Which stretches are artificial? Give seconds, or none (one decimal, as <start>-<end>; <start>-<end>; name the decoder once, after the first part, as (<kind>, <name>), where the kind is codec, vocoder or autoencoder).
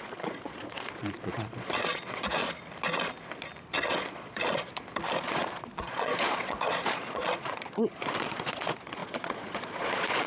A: 0.0-2.4 (vocoder, Vocos); 3.9-4.7; 5.2-10.3